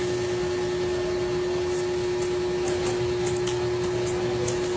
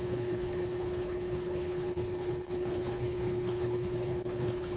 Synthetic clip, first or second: second